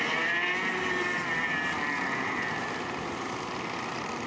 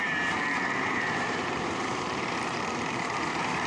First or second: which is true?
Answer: first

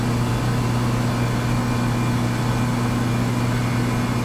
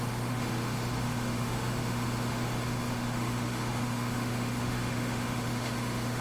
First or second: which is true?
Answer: first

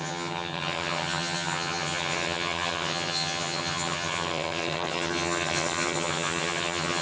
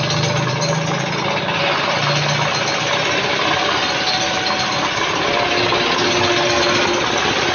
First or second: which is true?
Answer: second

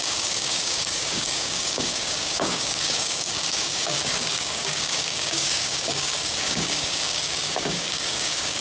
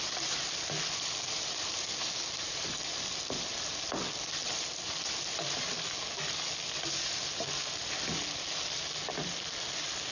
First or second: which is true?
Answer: second